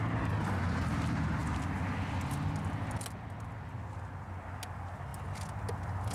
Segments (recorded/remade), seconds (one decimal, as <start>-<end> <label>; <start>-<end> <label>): 0.0-6.1 recorded